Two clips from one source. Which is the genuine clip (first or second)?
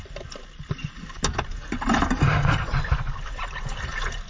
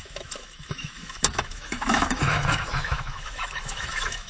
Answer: first